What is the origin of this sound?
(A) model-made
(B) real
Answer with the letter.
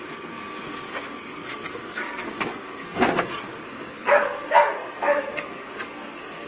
A